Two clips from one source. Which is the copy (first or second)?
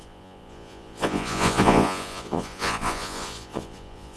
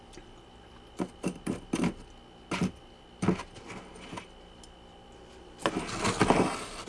first